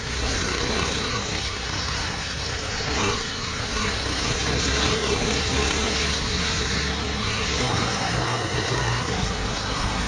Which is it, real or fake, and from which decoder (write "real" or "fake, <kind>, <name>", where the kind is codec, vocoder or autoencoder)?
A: fake, codec, SNAC